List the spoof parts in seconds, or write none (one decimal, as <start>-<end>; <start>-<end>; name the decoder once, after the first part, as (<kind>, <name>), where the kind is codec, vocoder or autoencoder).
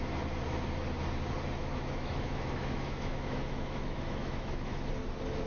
1.6-4.9 (autoencoder, DAC-VAE)